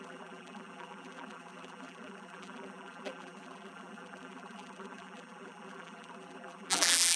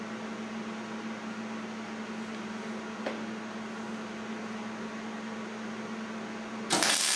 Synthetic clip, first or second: first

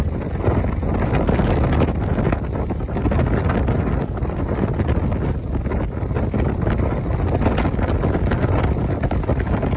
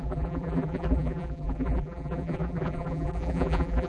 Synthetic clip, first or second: second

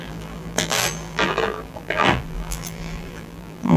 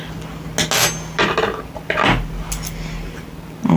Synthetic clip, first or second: first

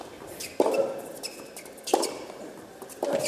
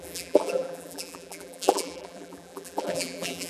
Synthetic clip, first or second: second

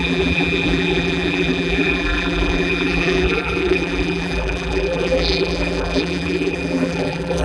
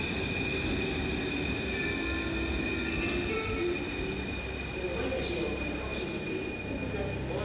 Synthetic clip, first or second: first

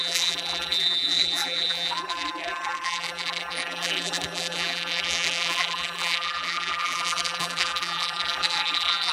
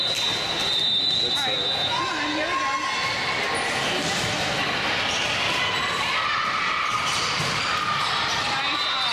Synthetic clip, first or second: first